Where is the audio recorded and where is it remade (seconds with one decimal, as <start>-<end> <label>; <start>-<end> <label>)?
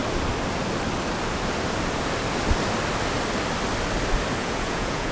0.0-4.4 recorded; 4.4-5.1 remade